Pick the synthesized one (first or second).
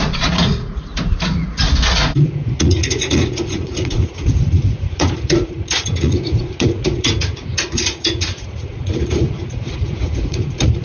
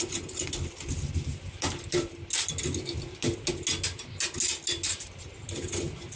first